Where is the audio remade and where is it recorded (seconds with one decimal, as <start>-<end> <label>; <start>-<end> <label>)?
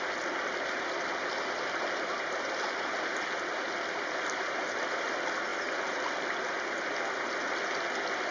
0.0-8.3 recorded